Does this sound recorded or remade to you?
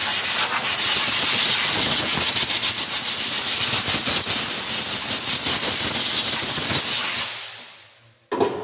recorded